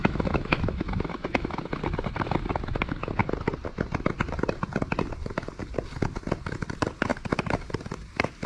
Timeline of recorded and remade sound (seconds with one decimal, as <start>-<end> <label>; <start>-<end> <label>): 0.0-1.6 remade; 1.6-8.5 recorded